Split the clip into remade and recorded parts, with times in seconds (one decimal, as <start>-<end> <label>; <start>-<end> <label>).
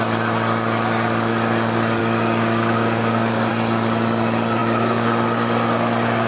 0.0-2.0 recorded; 2.0-3.5 remade; 3.5-6.3 recorded